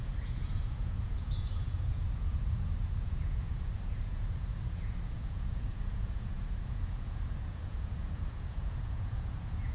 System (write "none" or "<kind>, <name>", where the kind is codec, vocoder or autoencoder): vocoder, Vocos